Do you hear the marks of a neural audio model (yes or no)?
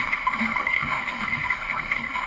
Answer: yes